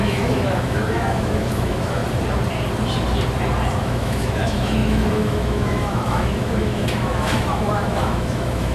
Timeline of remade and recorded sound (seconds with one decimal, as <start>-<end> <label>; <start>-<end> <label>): 0.0-2.0 remade; 2.0-3.8 recorded; 3.8-8.7 remade